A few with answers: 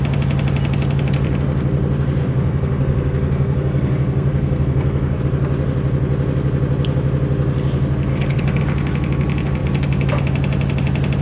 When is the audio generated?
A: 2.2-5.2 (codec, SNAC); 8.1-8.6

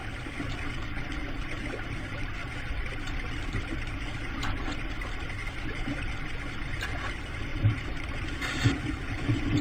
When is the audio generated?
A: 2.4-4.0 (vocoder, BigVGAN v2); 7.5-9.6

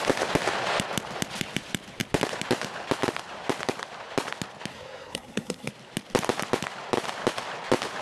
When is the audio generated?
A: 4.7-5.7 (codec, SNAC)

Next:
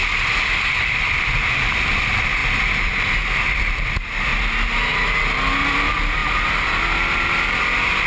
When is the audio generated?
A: 0.0-4.3 (vocoder, BigVGAN v2); 5.6-6.2; 7.2-8.1

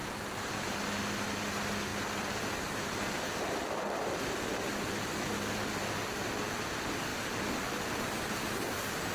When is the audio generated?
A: none